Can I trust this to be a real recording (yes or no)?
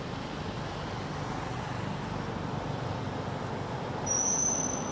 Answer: yes